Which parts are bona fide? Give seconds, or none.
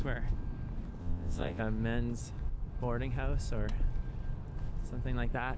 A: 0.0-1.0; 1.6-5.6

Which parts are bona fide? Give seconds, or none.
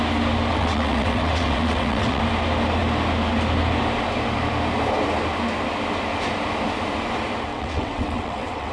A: 0.0-0.5; 2.2-7.5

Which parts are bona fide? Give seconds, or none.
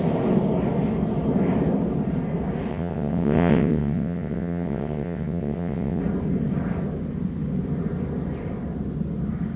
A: 0.0-2.7; 6.0-9.6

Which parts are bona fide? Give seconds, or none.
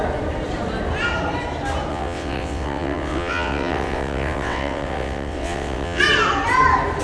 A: 0.0-1.9; 6.0-7.0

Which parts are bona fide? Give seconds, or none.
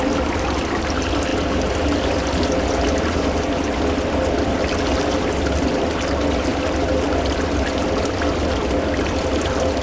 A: 0.0-9.8